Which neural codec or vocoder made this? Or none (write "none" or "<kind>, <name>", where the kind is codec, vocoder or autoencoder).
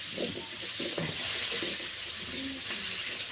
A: none